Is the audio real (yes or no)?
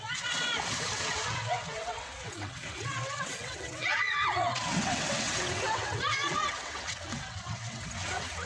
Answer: no